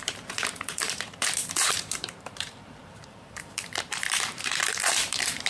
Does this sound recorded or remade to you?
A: remade